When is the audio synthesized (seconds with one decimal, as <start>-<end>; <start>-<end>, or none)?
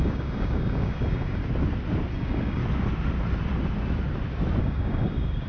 0.0-1.4; 2.1-2.6; 4.6-5.5